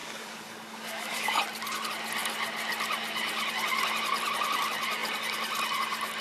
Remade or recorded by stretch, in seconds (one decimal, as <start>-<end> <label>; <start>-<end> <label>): 0.0-1.4 remade; 1.4-6.2 recorded